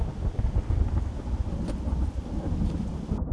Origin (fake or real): real